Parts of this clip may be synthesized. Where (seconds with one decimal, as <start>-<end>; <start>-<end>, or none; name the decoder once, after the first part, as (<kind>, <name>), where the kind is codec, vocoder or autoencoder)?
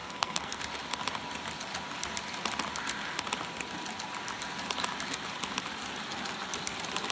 0.0-0.6 (codec, SNAC)